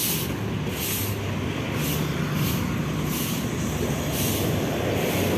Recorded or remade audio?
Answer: recorded